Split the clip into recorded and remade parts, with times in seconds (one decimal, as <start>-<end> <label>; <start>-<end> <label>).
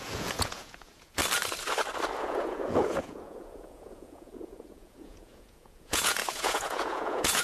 0.0-1.2 remade; 1.2-2.2 recorded; 2.2-7.4 remade